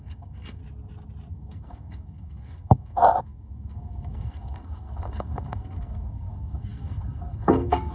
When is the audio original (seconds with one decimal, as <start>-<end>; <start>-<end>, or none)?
0.6-1.3